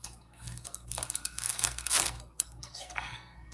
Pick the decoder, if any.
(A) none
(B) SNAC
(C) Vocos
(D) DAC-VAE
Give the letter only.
B